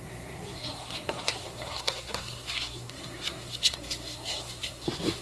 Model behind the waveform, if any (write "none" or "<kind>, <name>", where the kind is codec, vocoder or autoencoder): codec, SNAC